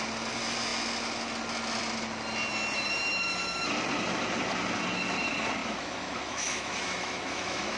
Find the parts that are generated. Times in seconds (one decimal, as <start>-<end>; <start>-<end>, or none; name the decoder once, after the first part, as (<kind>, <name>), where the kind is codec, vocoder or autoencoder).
5.6-7.8 (autoencoder, DAC-VAE)